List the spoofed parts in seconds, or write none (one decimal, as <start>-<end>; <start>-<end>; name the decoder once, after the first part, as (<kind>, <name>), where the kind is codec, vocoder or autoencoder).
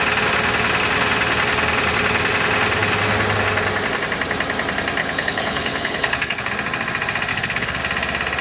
5.0-6.5 (codec, HILCodec); 7.3-7.8